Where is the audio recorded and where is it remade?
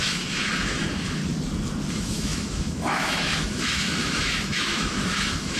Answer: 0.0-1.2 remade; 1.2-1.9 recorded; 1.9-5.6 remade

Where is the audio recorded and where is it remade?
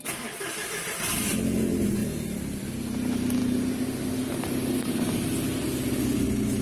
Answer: 0.0-6.6 recorded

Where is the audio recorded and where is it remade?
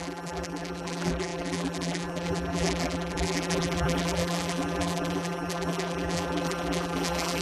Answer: 0.0-7.4 remade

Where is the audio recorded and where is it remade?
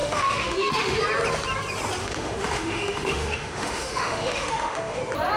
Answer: 0.0-1.0 remade; 1.0-2.0 recorded; 2.0-5.0 remade; 5.0-5.4 recorded